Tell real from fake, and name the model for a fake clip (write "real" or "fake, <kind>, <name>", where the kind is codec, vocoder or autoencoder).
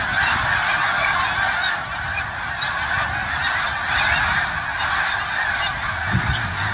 real